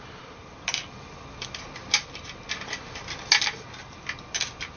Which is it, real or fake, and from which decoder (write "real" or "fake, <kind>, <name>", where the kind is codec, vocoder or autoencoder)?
real